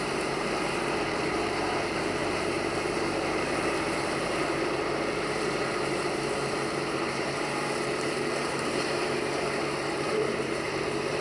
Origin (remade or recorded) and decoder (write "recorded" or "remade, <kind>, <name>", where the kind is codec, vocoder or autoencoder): remade, vocoder, BigVGAN v2